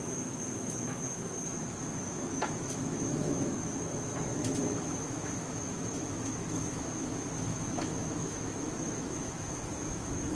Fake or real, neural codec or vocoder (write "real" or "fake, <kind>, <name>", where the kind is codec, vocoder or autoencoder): fake, autoencoder, DAC-VAE